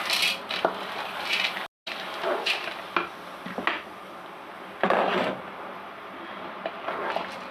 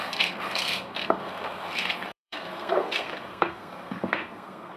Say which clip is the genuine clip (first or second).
first